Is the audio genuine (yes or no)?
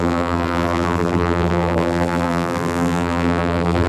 no